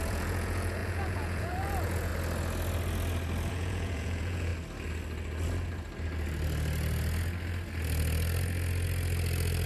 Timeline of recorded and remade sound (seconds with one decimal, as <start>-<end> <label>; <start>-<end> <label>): 0.0-2.1 remade; 2.1-3.5 recorded; 3.5-4.5 remade; 4.5-9.7 recorded